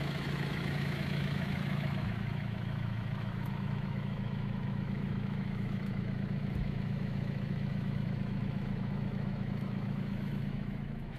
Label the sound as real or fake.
fake